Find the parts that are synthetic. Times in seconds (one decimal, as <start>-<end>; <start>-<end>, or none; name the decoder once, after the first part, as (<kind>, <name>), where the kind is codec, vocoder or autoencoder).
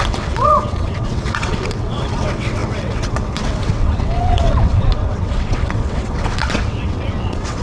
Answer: 0.0-7.6 (vocoder, WaveNeXt)